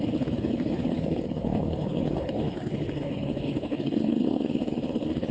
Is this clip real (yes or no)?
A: no